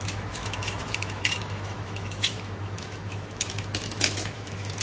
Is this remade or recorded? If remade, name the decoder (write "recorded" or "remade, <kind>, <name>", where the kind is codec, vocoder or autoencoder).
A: remade, autoencoder, DAC-VAE